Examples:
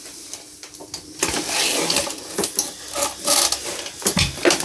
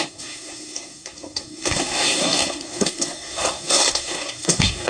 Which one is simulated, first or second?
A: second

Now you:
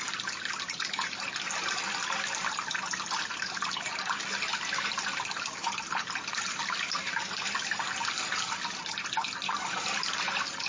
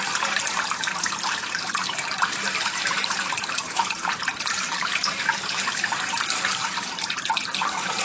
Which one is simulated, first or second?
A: second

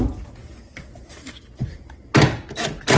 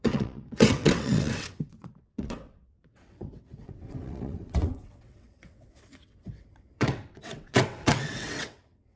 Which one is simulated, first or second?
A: second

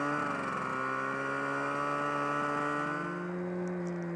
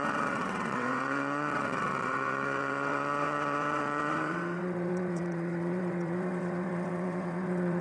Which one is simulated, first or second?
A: second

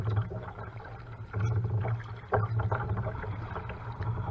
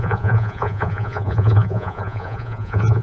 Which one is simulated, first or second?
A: second